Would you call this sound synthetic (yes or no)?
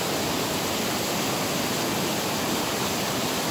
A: no